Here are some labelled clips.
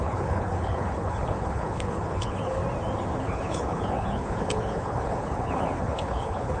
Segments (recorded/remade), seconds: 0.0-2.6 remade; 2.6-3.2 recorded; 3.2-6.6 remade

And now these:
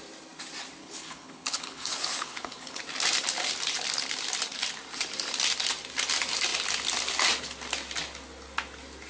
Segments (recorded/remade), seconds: 0.0-0.8 recorded; 0.8-2.8 remade; 2.8-9.1 recorded

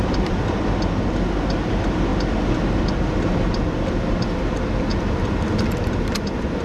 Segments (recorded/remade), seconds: 0.0-6.6 recorded

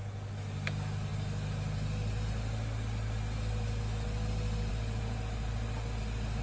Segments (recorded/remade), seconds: 0.0-6.4 recorded

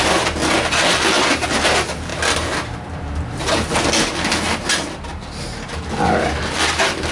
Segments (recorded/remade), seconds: 0.0-7.1 recorded

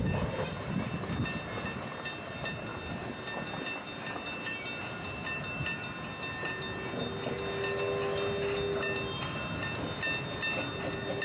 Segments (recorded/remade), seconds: 0.0-11.2 recorded

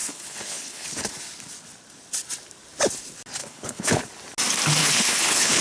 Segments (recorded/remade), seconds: 0.0-1.1 remade; 1.1-3.4 recorded; 3.4-4.0 remade; 4.0-4.8 recorded; 4.8-5.6 remade